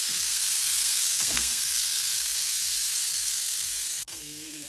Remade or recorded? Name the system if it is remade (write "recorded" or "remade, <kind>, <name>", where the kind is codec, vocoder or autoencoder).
remade, codec, SNAC